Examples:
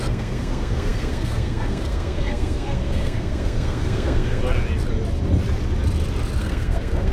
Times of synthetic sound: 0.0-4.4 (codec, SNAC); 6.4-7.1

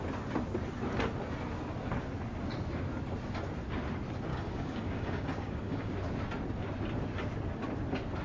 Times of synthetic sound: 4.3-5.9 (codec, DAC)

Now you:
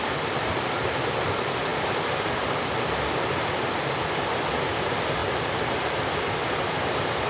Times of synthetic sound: none

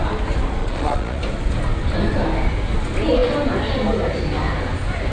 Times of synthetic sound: 0.6-1.2 (vocoder, Vocos)

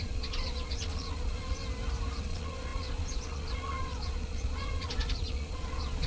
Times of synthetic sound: 0.0-1.6 (vocoder, Vocos); 2.2-6.1